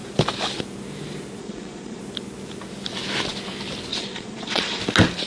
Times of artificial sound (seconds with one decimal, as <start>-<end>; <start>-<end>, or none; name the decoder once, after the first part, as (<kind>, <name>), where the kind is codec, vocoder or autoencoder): 1.4-2.0 (vocoder, Vocos); 3.9-4.8